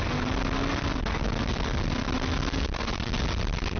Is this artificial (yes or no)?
no